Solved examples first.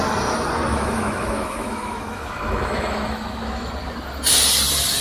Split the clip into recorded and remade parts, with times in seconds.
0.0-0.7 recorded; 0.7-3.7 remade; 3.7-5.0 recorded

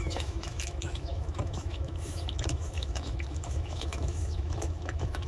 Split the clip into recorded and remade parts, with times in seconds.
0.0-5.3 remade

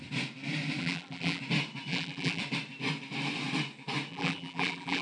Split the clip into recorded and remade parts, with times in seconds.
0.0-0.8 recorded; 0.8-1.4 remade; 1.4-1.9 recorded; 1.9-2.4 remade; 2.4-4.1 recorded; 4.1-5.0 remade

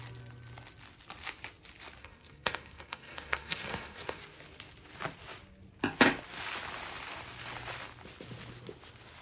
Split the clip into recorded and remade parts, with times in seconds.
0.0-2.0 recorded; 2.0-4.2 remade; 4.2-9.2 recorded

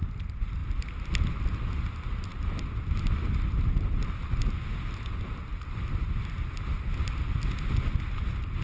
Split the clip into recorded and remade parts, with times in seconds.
0.0-8.6 recorded